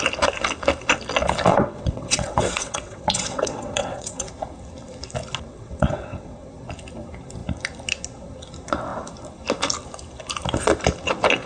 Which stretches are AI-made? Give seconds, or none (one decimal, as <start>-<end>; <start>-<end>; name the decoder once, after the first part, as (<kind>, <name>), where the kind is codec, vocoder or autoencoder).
1.5-4.3 (vocoder, WaveNeXt); 5.5-6.5